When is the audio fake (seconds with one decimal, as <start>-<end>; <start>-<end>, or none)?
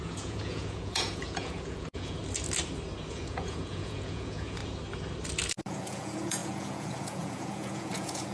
0.0-2.2; 3.1-4.6; 5.6-8.3